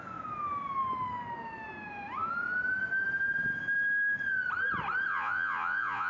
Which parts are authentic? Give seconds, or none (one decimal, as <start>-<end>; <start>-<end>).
0.0-5.1